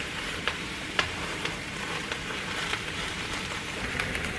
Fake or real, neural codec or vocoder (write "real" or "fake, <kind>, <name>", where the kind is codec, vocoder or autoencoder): fake, vocoder, BigVGAN v2